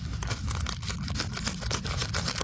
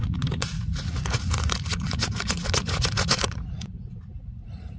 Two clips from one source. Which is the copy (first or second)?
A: second